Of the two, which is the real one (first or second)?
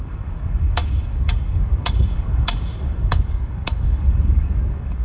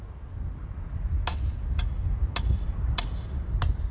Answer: second